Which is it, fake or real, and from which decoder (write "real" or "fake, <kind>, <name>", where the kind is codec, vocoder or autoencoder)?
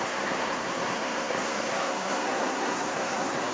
fake, codec, SNAC